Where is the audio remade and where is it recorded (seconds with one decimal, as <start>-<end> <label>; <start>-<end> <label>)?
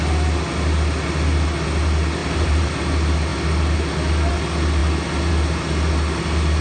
0.0-2.2 recorded; 2.2-2.7 remade; 2.7-6.6 recorded